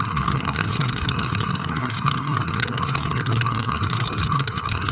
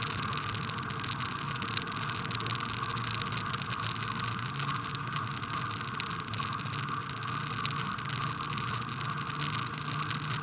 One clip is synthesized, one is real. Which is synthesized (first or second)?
first